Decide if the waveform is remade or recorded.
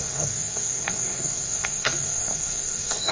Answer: remade